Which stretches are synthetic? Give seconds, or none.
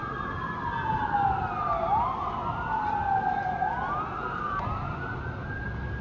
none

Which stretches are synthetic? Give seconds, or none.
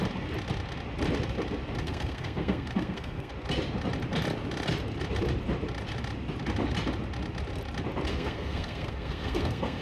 1.8-3.3 (codec, SNAC); 8.1-9.8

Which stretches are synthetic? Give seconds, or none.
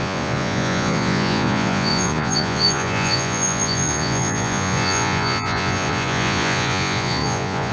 0.0-7.7 (vocoder, Vocos)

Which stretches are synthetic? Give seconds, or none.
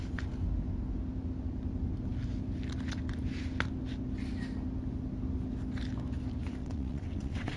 6.6-7.6 (vocoder, WaveNeXt)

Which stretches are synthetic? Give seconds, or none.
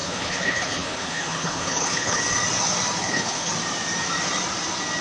0.0-2.2 (codec, HILCodec); 3.0-3.5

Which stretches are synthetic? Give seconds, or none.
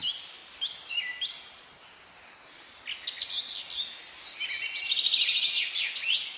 none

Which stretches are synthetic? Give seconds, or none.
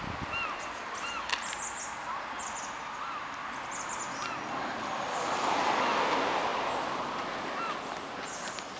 none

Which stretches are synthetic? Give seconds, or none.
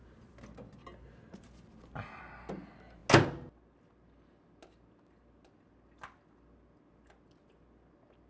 none